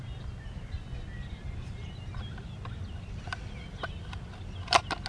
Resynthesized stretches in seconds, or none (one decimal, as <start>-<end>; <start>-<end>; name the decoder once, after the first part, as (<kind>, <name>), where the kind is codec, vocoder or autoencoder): none